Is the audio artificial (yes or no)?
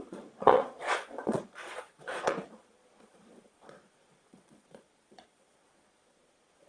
yes